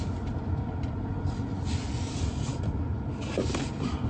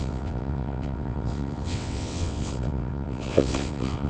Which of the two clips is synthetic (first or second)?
second